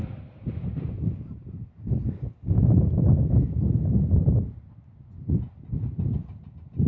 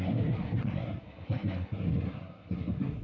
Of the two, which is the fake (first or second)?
second